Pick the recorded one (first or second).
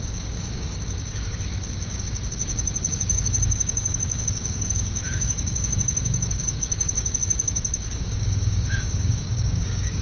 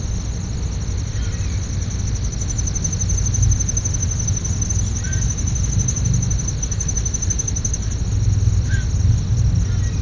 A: second